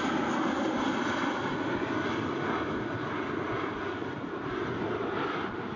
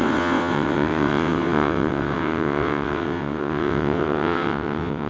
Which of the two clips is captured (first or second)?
first